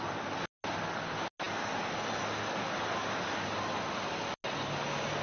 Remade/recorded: recorded